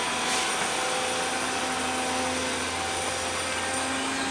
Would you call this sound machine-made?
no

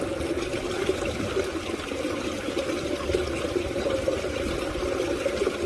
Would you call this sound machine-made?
no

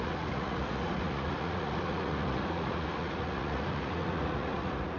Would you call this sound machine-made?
yes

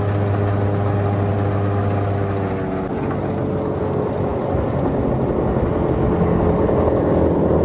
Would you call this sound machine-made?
no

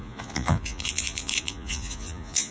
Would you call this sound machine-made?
yes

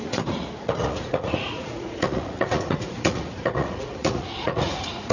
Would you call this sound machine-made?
yes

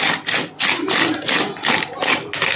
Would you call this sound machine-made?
no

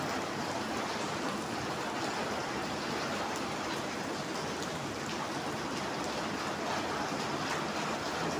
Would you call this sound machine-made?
no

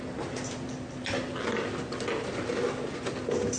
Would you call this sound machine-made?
no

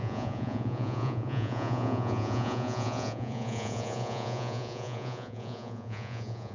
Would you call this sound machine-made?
yes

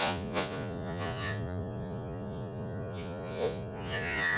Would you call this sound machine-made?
yes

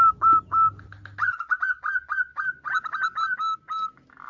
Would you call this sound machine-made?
no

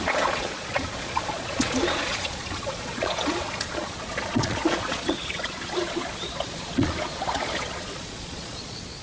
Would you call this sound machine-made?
yes